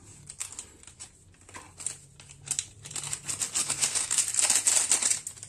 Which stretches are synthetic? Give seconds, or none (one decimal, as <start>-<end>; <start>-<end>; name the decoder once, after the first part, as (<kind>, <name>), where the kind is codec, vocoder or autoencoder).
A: 3.6-4.2 (codec, SNAC)